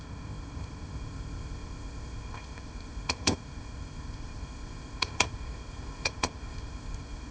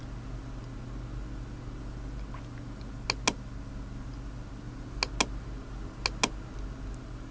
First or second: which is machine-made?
first